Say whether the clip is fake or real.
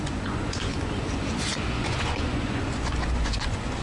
fake